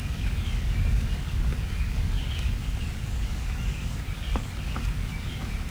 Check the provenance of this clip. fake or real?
fake